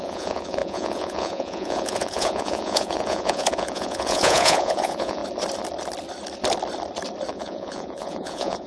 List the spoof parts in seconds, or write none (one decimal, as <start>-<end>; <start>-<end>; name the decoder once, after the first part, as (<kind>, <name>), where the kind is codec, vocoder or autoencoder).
0.0-5.2 (vocoder, Vocos); 7.3-8.7